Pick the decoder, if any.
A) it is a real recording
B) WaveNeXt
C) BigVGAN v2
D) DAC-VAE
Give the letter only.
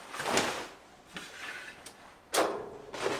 A